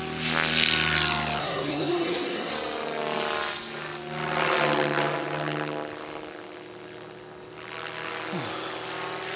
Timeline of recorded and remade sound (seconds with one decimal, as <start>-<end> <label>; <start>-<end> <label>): 0.0-1.4 recorded; 1.4-2.5 remade; 2.5-9.4 recorded